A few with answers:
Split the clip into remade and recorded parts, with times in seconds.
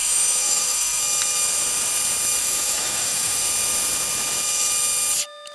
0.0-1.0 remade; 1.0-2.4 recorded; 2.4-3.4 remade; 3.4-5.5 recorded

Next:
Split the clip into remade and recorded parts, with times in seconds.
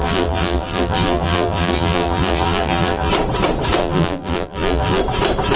0.0-3.1 remade; 3.1-3.8 recorded; 3.8-5.0 remade; 5.0-5.6 recorded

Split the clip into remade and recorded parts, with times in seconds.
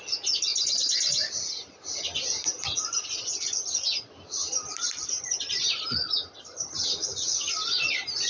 0.0-8.3 recorded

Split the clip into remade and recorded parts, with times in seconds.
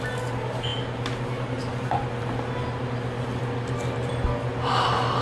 0.0-5.2 recorded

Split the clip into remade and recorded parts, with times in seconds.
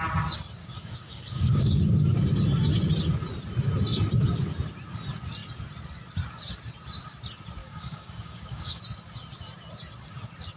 0.0-0.6 recorded; 0.6-1.8 remade; 1.8-7.6 recorded; 7.6-8.8 remade; 8.8-10.6 recorded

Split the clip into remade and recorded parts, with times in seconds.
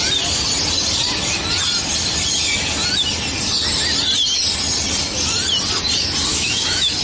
0.0-6.3 recorded; 6.3-7.0 remade